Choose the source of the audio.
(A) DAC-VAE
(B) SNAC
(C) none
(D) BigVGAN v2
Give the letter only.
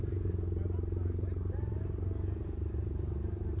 C